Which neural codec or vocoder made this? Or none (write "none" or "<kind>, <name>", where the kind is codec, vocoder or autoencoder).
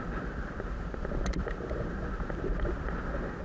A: vocoder, BigVGAN v2